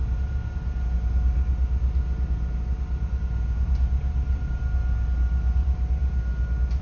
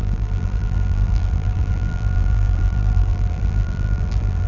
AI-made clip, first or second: second